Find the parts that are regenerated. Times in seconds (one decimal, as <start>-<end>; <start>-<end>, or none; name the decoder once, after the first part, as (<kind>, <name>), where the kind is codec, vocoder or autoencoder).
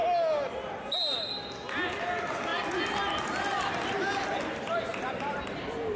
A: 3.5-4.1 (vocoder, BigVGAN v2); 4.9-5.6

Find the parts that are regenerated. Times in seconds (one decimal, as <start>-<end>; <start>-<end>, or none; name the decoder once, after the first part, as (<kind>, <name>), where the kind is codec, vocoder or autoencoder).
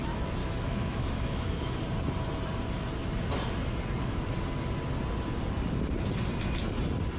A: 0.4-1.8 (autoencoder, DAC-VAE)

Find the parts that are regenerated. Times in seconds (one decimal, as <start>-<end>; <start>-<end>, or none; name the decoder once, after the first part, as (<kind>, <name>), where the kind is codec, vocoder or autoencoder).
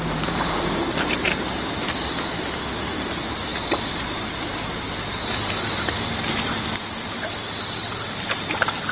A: 0.0-8.9 (vocoder, BigVGAN v2)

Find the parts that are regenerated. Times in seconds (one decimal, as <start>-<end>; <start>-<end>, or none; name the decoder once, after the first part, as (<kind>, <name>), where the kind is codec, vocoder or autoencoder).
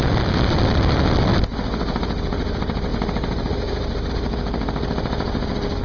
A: none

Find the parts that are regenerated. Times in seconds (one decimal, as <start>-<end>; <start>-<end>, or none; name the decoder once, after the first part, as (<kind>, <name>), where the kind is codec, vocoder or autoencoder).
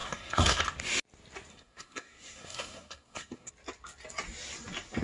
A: 0.0-0.6 (codec, SNAC); 1.5-3.5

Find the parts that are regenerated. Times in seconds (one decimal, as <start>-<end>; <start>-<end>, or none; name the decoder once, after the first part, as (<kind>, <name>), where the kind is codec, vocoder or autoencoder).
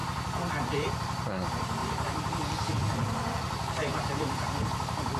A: 0.9-5.2 (vocoder, BigVGAN v2)